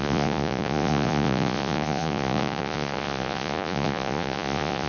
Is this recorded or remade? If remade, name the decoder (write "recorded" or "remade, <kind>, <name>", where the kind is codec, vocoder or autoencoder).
remade, vocoder, Vocos